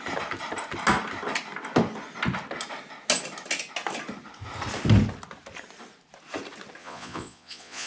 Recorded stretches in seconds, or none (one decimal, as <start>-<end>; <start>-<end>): 0.0-6.8